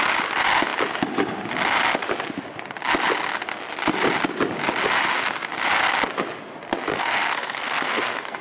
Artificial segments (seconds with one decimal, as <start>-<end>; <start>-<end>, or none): 6.9-8.4